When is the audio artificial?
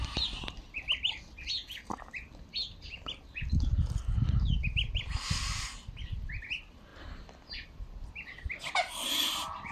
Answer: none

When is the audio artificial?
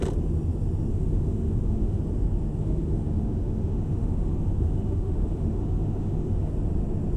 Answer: 0.9-2.0; 2.6-6.5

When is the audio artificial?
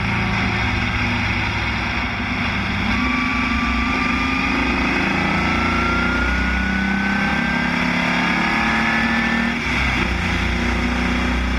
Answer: none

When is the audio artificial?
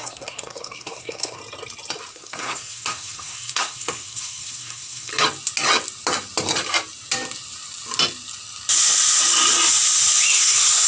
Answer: 0.0-1.4; 2.1-5.1; 10.3-10.9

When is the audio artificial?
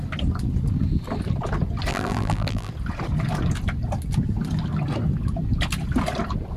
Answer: 1.9-2.7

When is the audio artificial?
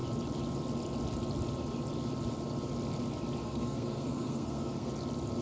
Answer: 3.4-4.9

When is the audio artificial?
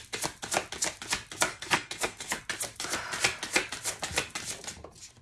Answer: 1.5-2.4